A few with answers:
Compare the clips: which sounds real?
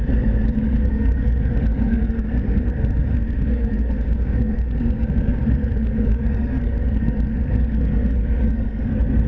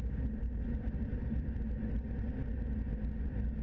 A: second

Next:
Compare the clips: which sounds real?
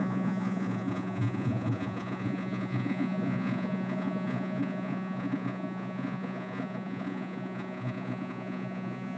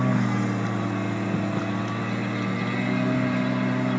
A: second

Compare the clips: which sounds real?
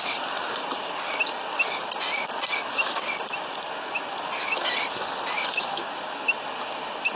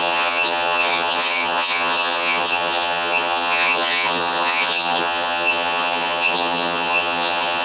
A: first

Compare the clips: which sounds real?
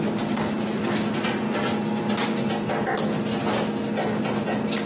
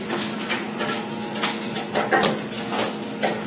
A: first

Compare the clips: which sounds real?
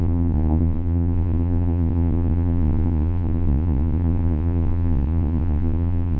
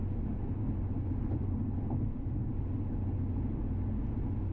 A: second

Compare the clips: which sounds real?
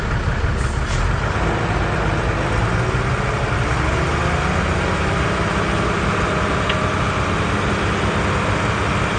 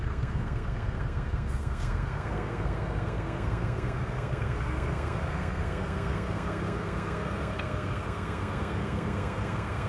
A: first